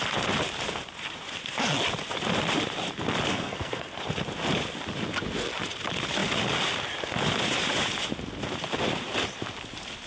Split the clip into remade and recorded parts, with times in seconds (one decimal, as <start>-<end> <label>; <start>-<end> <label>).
0.0-3.3 recorded; 3.3-4.0 remade; 4.0-10.1 recorded